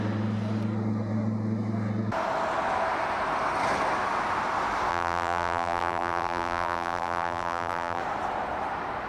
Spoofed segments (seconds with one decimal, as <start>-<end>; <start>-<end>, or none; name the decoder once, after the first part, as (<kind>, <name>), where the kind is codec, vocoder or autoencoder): 4.9-8.0 (vocoder, BigVGAN v2)